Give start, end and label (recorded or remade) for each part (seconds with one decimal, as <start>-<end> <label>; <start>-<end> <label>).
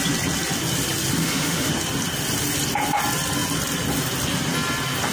0.0-1.2 recorded; 1.2-1.7 remade; 1.7-5.1 recorded